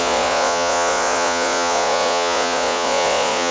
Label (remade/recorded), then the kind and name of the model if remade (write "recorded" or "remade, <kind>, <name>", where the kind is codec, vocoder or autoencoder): remade, vocoder, Vocos